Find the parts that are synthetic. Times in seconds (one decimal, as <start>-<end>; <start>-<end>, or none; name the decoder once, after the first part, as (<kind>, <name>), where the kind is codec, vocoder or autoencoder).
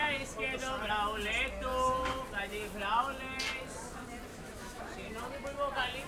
4.3-4.8 (autoencoder, DAC-VAE)